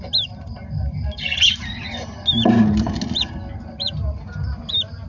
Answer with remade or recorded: recorded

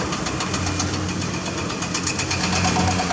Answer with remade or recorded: recorded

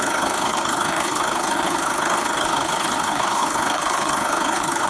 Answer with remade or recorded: remade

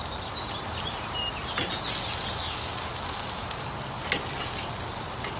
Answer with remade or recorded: recorded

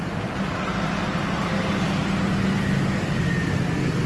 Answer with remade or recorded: recorded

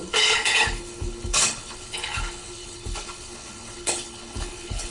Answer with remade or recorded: remade